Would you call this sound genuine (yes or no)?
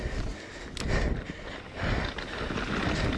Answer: yes